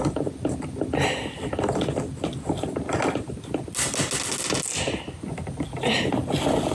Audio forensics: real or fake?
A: real